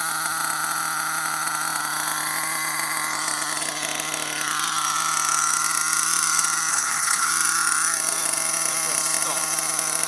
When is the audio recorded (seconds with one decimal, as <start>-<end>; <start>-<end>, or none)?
0.0-6.7; 7.3-10.1

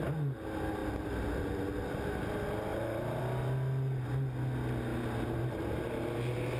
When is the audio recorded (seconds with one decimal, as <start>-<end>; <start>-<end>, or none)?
0.0-2.7; 3.2-4.9